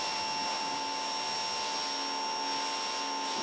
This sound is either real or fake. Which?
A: real